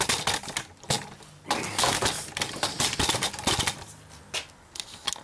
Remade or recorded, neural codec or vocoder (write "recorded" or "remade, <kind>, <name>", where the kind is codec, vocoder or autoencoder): recorded